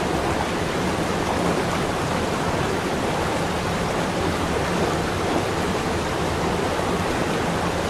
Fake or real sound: real